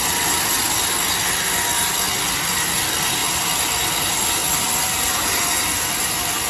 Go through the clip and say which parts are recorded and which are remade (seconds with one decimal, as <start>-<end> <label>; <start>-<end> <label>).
0.0-6.5 recorded